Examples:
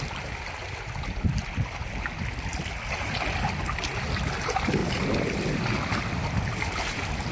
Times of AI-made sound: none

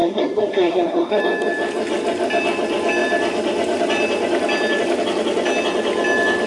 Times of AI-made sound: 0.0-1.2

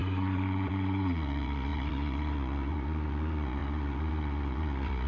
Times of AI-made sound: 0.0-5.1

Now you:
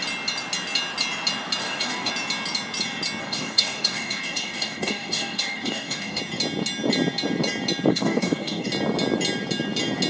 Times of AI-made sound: 1.6-2.1; 3.2-6.2; 7.9-8.7

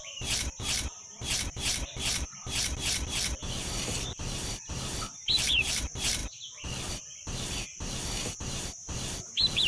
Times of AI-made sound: 0.0-9.7

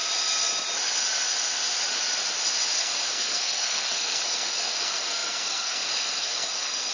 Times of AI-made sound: 2.8-6.9

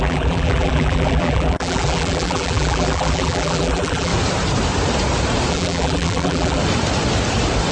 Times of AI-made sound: 0.0-4.1; 5.5-6.6

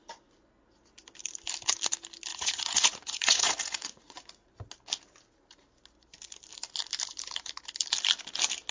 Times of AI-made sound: 2.3-4.5